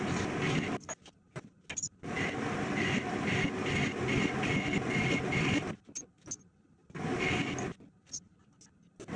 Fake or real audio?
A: real